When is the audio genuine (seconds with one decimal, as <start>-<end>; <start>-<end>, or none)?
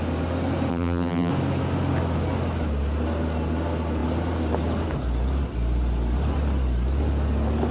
0.0-0.7; 1.3-7.7